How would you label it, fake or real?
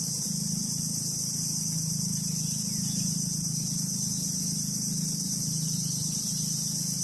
real